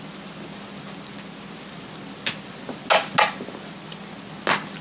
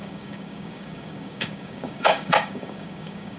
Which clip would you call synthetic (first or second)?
second